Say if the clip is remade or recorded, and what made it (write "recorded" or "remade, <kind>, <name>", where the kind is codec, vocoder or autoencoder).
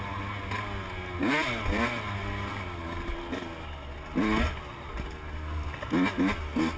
recorded